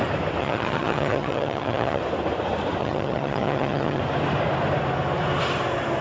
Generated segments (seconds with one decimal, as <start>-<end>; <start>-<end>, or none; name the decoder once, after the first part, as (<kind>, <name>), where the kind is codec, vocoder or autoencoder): 0.4-2.0 (vocoder, HiFi-GAN); 2.8-4.0